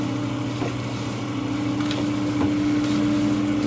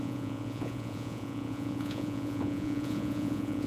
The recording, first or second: first